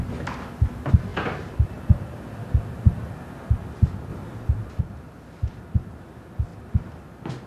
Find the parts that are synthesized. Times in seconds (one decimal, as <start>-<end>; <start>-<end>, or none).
1.1-1.7; 4.1-4.8